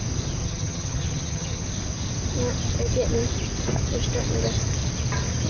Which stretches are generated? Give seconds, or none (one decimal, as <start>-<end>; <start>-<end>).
0.4-1.6